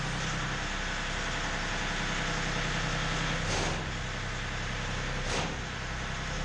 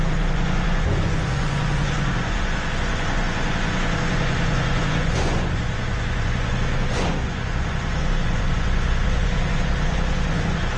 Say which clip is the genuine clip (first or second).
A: first